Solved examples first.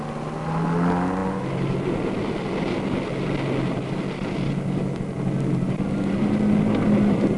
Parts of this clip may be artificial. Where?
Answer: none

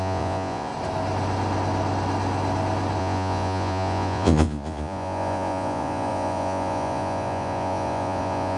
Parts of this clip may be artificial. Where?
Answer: 0.0-0.7 (vocoder, Vocos); 3.0-8.6

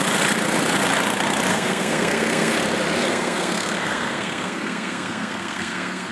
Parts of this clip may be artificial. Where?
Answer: 1.5-2.6 (codec, SNAC); 3.1-6.1